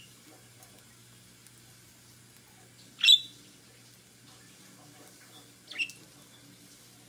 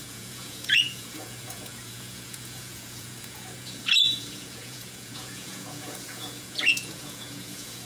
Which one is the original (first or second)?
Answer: first